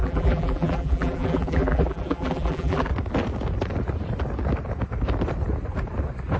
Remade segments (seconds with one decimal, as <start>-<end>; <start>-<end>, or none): 0.0-2.9